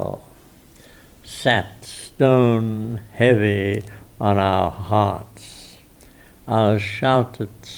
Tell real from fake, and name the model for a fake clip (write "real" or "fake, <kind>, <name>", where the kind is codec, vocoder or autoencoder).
fake, vocoder, BigVGAN v2